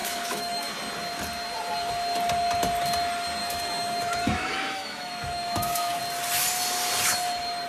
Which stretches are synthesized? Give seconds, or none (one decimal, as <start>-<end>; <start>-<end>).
0.0-0.7; 3.4-6.0